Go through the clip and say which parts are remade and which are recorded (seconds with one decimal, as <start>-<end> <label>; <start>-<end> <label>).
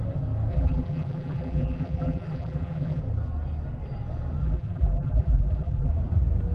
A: 0.0-0.5 recorded; 0.5-3.0 remade; 3.0-4.4 recorded; 4.4-5.9 remade; 5.9-6.5 recorded